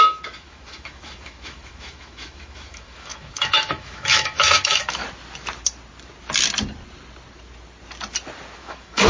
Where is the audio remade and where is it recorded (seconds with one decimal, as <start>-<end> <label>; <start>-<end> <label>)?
0.0-5.0 remade; 5.0-8.5 recorded; 8.5-9.1 remade